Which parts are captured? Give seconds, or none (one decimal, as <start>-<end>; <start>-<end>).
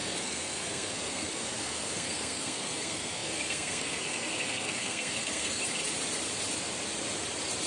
5.6-7.7